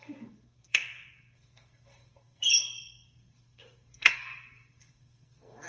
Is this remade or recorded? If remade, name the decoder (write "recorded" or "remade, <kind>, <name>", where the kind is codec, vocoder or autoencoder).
remade, codec, SNAC